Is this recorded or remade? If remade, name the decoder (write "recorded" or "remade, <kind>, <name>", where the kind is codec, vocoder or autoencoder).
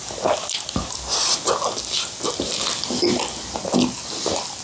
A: recorded